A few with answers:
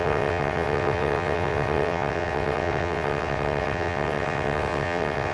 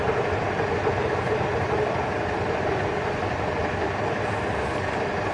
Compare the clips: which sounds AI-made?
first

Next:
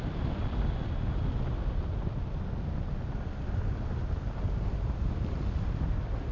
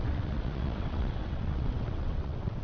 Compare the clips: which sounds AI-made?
second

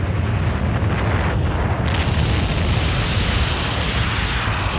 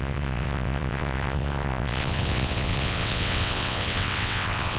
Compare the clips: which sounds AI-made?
second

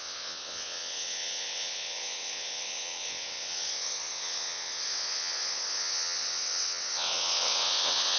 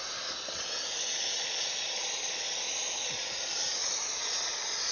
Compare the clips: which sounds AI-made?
first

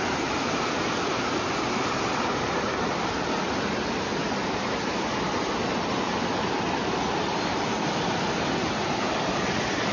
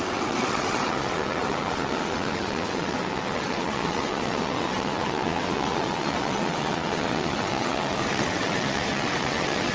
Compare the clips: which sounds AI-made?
second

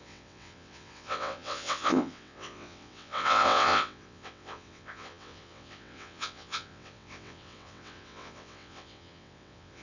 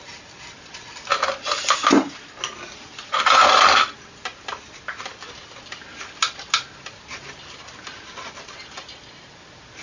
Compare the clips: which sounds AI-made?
first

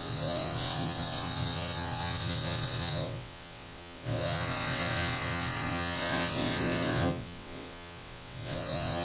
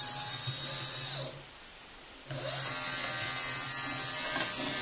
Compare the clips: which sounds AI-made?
first